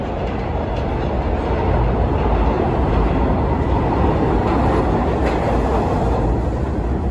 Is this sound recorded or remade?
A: recorded